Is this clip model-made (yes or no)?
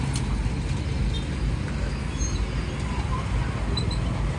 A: no